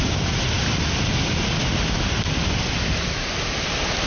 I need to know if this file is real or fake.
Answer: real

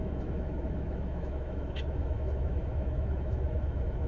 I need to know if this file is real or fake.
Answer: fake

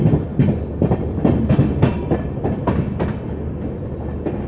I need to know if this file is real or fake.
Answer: real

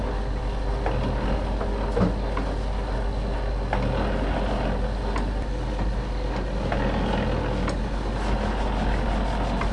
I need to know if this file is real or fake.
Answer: real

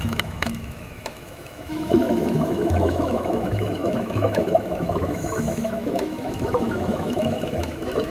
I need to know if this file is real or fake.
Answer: fake